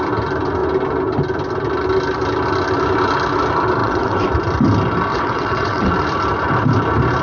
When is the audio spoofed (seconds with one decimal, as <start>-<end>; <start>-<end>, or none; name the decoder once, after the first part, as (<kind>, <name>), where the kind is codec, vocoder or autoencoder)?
3.8-4.3 (vocoder, WaveNeXt); 5.1-5.9